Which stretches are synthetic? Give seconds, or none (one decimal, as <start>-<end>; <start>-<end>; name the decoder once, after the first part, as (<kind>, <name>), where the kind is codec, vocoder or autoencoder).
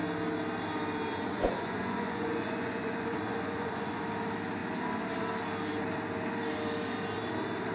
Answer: 1.1-4.0 (vocoder, Vocos)